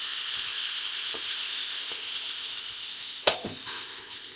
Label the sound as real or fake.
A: fake